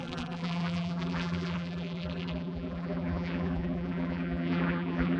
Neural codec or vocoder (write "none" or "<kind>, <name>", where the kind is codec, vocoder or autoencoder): vocoder, BigVGAN v2